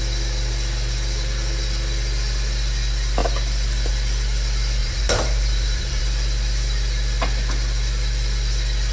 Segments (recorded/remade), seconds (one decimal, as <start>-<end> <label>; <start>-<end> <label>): 0.0-4.8 recorded; 4.8-6.0 remade; 6.0-8.9 recorded